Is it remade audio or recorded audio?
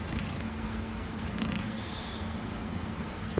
remade